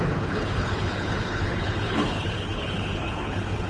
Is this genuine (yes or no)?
no